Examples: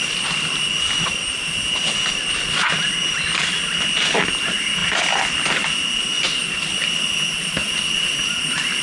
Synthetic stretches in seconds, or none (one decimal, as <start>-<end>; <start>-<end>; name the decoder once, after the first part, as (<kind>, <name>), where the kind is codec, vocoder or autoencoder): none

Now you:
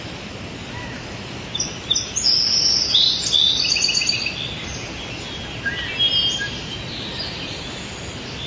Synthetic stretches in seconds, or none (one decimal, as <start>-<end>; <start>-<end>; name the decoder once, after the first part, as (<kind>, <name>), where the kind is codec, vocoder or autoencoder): none

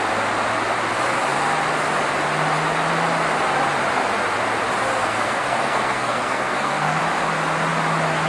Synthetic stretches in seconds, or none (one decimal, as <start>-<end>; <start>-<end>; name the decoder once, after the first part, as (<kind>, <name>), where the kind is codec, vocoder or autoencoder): 5.0-7.0 (codec, SNAC)